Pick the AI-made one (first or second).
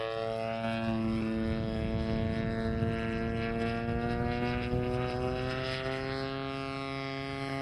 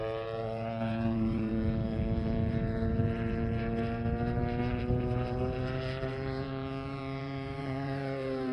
second